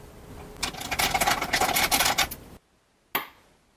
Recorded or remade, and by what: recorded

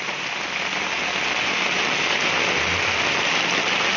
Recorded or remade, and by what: recorded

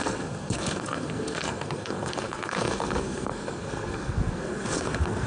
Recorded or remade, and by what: remade, codec, SNAC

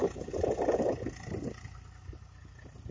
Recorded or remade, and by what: recorded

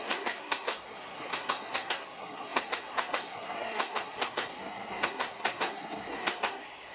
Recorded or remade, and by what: remade, codec, SNAC